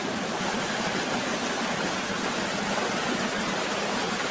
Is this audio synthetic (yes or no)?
no